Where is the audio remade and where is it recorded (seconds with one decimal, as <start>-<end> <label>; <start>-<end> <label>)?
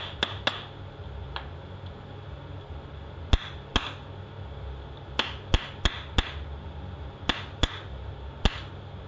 0.0-9.1 recorded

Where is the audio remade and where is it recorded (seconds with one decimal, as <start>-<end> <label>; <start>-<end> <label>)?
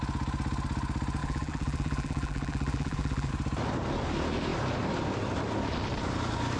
0.0-1.2 recorded; 1.2-3.3 remade; 3.3-6.6 recorded